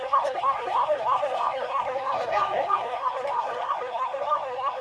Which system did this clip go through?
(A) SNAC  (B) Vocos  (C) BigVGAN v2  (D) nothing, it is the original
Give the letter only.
A